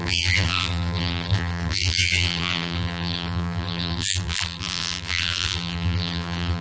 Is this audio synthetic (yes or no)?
yes